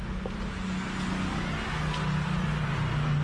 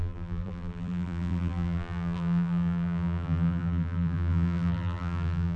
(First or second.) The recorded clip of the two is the first